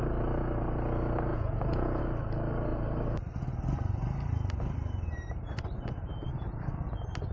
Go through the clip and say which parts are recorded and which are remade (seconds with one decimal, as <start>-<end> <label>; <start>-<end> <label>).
0.0-1.3 recorded; 1.3-2.0 remade; 2.0-7.3 recorded